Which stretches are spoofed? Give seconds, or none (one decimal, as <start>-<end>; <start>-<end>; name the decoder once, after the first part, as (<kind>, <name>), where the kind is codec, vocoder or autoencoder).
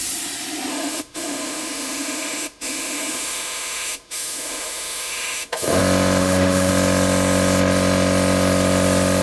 0.7-5.8 (autoencoder, DAC-VAE); 6.2-6.7